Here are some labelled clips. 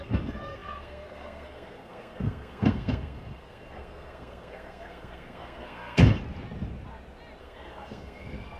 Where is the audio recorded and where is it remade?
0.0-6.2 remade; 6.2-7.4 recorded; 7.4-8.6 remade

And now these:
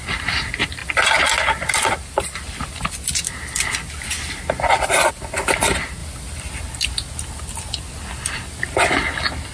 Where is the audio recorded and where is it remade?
0.0-9.5 recorded